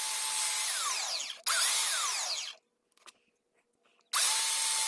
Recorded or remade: recorded